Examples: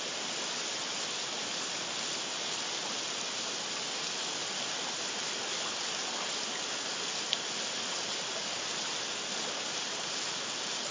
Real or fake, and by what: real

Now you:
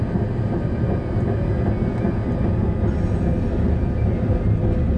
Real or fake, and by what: real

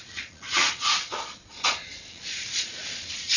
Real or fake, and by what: fake, vocoder, Vocos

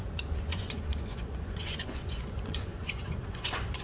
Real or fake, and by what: fake, vocoder, Vocos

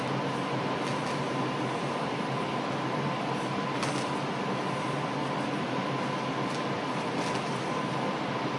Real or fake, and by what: real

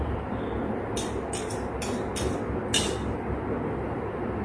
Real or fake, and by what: real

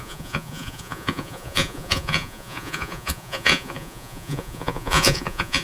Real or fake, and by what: fake, vocoder, Vocos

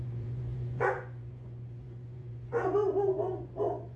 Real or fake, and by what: fake, vocoder, Vocos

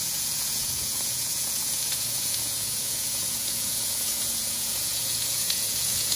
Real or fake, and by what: fake, vocoder, Vocos